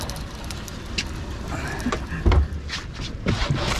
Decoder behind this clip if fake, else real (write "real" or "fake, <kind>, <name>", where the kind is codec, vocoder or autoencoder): real